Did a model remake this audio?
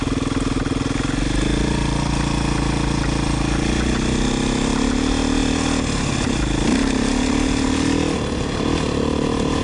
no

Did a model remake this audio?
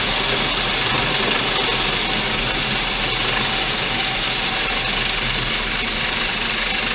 no